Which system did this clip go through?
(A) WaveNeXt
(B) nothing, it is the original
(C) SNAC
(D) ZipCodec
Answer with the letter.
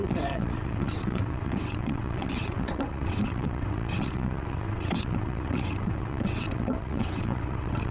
A